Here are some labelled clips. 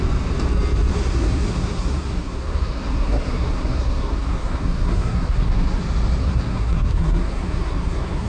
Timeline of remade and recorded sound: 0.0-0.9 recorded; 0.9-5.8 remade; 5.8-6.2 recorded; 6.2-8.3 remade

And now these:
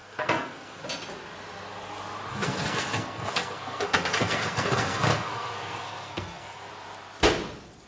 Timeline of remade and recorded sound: 0.0-0.8 remade; 0.8-2.3 recorded; 2.3-6.7 remade; 6.7-7.9 recorded

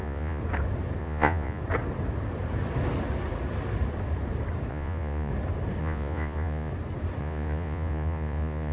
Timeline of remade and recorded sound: 0.0-0.4 remade; 0.4-1.0 recorded; 1.0-1.6 remade; 1.6-4.7 recorded; 4.7-5.3 remade; 5.3-5.8 recorded; 5.8-6.7 remade; 6.7-7.2 recorded; 7.2-8.7 remade

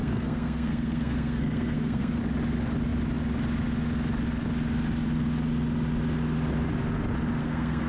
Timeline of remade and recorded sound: 0.0-2.2 remade; 2.2-7.4 recorded; 7.4-7.9 remade

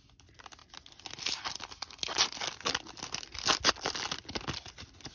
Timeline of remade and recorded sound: 0.0-5.1 recorded

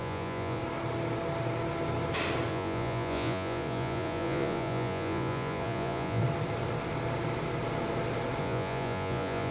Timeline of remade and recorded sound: 0.0-0.6 remade; 0.6-2.5 recorded; 2.5-6.2 remade; 6.2-8.4 recorded; 8.4-9.5 remade

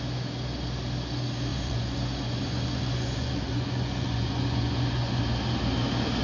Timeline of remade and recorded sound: 0.0-1.5 recorded; 1.5-5.2 remade; 5.2-6.2 recorded